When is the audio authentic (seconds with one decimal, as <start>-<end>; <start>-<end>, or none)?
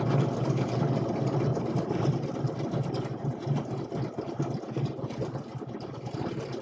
0.0-1.5; 2.1-6.6